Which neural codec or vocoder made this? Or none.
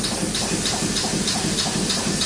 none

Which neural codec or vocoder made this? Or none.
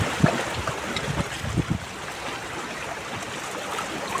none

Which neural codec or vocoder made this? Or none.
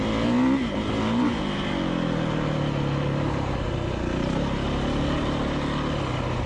none